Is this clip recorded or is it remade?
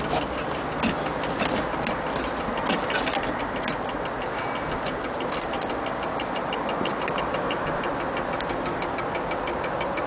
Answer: recorded